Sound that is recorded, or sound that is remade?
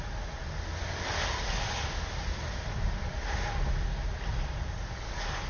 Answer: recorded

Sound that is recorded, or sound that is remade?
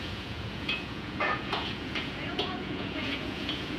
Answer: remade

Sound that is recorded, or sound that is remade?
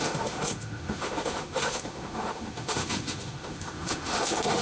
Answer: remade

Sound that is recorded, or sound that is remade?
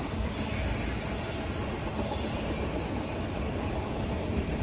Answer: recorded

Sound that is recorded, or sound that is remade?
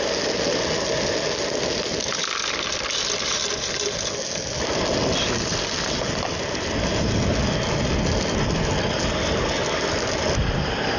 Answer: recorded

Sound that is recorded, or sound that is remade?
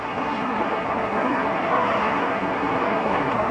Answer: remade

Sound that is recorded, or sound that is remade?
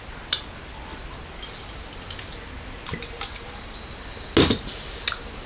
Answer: recorded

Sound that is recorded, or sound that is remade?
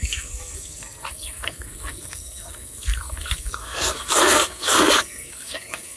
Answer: remade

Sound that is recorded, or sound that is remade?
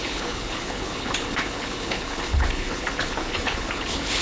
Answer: remade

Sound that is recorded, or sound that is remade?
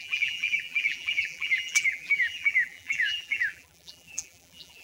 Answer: remade